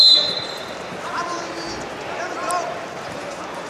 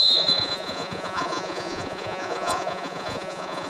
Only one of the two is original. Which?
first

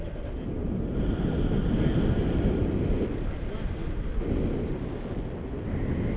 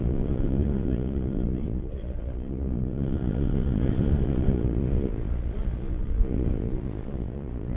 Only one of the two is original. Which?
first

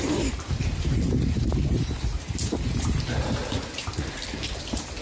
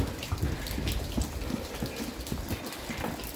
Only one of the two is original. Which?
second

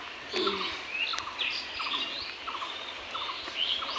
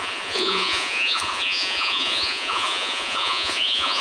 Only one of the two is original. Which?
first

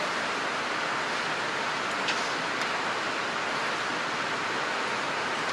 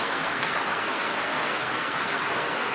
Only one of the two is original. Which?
first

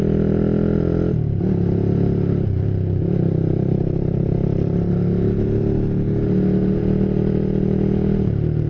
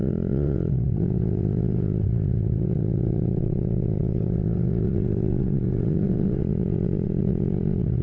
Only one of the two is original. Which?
first